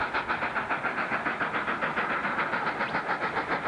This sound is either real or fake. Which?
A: real